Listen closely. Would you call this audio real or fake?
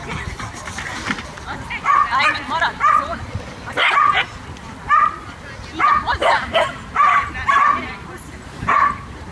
real